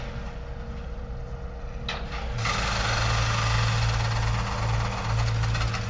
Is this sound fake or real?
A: real